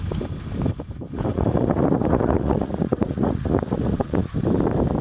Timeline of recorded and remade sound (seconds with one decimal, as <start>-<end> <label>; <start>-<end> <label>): 0.0-1.3 recorded; 1.3-4.3 remade; 4.3-5.0 recorded